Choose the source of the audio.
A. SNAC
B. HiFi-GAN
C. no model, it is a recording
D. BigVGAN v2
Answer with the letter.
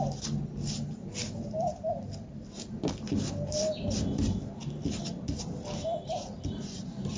C